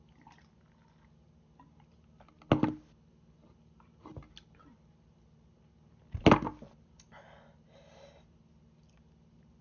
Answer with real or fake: real